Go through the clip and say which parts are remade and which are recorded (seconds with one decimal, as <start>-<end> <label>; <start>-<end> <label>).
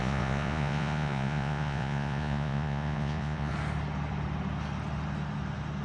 0.0-3.5 remade; 3.5-5.8 recorded